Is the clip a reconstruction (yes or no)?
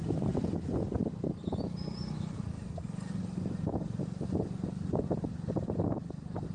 no